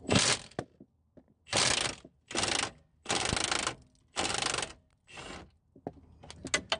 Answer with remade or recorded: recorded